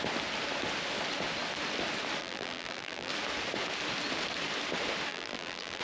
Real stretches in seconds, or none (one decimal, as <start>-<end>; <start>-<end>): 0.0-2.2; 3.1-5.1